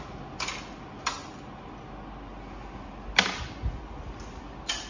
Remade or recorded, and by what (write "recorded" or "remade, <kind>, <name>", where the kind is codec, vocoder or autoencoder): recorded